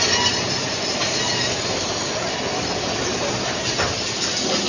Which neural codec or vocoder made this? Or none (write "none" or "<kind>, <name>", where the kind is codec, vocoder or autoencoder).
none